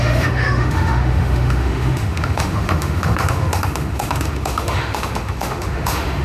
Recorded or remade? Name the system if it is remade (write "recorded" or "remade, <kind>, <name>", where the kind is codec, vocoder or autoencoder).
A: remade, autoencoder, DAC-VAE